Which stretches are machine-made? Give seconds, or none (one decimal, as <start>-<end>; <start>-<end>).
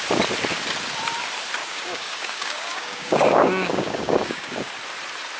1.6-4.7